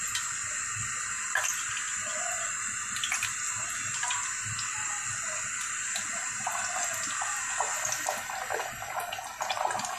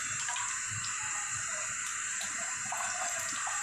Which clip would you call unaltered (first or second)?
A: first